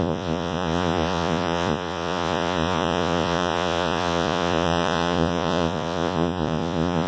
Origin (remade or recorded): remade